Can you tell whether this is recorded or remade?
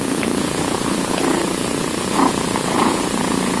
remade